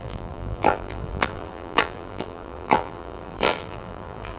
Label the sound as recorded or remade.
remade